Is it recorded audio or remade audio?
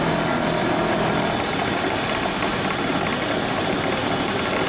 recorded